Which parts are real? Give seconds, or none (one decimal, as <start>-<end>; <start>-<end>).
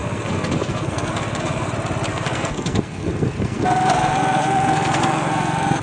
1.7-2.1